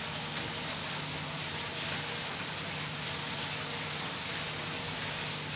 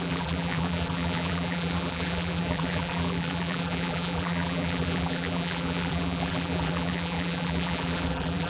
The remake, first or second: second